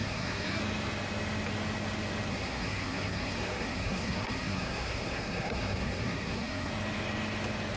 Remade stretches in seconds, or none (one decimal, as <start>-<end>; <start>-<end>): 0.0-0.6; 2.3-6.7